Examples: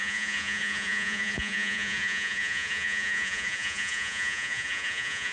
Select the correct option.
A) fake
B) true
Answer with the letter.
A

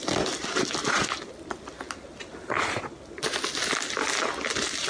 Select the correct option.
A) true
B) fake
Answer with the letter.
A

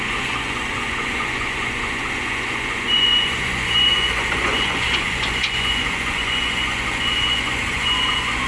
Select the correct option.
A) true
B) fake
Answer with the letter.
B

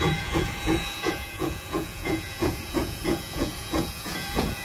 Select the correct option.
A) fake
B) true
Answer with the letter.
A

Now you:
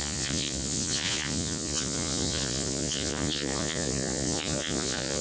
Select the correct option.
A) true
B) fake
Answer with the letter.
B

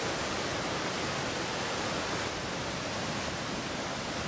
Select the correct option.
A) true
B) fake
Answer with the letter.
A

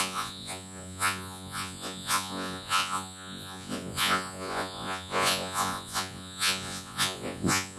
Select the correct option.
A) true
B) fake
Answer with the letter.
B